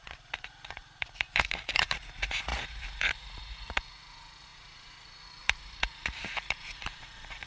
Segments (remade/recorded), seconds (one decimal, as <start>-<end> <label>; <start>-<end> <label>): 0.0-7.5 remade